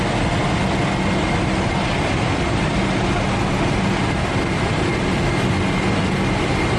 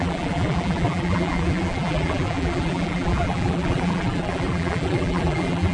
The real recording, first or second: first